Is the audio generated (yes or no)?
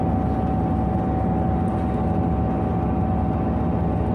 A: no